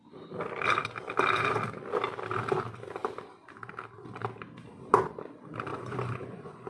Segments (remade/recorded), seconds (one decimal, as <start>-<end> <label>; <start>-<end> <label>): 0.0-5.7 recorded; 5.7-6.7 remade